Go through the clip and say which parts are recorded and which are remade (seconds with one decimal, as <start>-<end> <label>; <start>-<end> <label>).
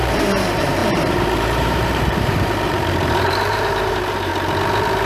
0.0-4.3 remade; 4.3-5.1 recorded